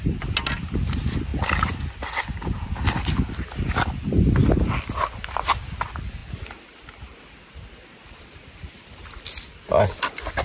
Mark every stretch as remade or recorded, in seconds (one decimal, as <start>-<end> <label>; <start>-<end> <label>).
0.0-10.4 recorded